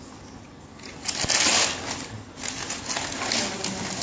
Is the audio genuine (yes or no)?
yes